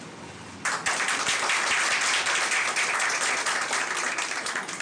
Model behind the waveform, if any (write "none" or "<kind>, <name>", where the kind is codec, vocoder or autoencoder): none